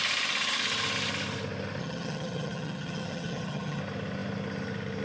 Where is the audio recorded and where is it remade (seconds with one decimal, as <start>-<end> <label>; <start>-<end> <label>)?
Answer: 0.0-1.8 recorded; 1.8-3.8 remade; 3.8-5.0 recorded

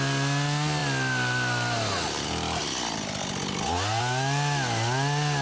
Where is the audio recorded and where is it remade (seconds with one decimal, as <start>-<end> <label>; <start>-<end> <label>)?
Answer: 0.0-5.4 recorded

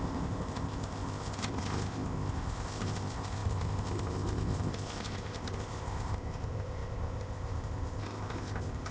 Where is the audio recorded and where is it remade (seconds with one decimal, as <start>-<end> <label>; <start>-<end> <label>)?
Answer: 0.0-8.9 remade

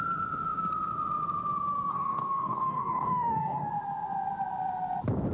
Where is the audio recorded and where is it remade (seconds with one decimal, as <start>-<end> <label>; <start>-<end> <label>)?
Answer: 0.0-1.9 recorded; 1.9-3.7 remade; 3.7-5.3 recorded